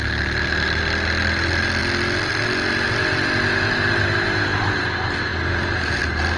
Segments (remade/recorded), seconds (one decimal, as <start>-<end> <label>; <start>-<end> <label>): 0.0-6.4 recorded

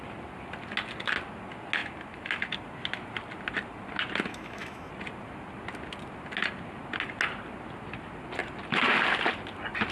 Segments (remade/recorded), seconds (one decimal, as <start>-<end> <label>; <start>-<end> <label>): 0.0-4.3 recorded; 4.3-4.9 remade; 4.9-9.9 recorded

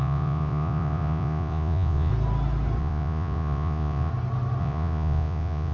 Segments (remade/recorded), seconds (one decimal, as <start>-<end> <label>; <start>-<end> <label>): 0.0-2.1 remade; 2.1-2.8 recorded; 2.8-4.1 remade; 4.1-4.6 recorded; 4.6-5.7 remade

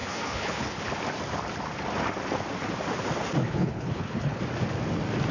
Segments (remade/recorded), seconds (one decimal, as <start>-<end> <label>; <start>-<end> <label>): 0.0-0.9 remade; 0.9-3.4 recorded; 3.4-4.4 remade; 4.4-5.3 recorded

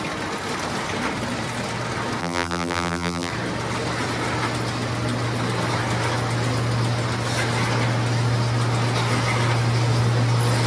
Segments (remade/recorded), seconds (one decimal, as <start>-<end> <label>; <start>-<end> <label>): 0.0-2.2 recorded; 2.2-3.3 remade; 3.3-10.7 recorded